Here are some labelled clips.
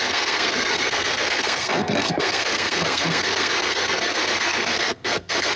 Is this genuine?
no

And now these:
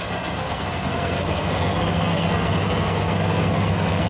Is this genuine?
no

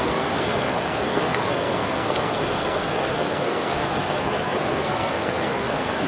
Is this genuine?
no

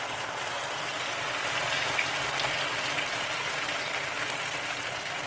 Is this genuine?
yes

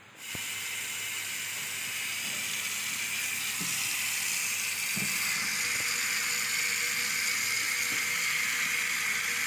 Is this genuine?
yes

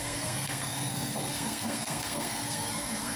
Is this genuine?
no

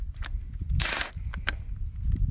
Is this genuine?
yes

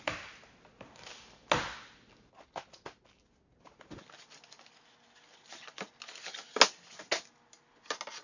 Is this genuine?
yes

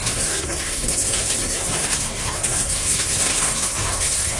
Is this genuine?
no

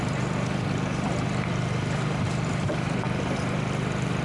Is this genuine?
yes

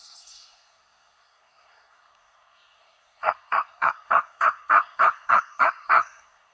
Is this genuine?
no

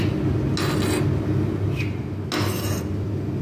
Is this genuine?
yes